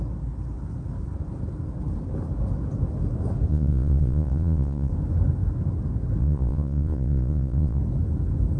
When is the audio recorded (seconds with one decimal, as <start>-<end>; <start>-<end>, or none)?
0.0-3.5; 4.9-6.2; 7.8-8.6